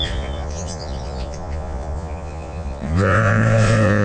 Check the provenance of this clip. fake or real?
fake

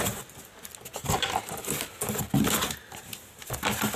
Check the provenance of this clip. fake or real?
real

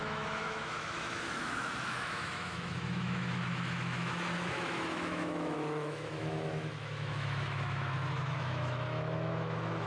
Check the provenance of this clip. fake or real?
fake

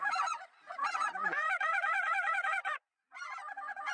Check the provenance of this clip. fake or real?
fake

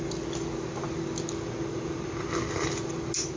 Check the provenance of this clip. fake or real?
real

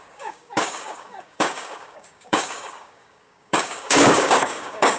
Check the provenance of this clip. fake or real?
fake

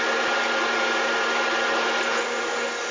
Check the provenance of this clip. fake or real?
real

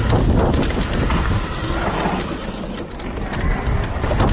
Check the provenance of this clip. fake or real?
real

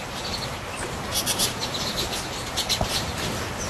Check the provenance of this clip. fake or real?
real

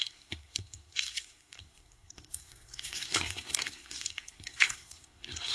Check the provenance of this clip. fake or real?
fake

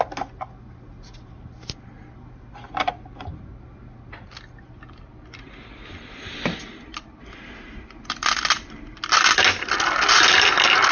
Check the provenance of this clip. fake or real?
real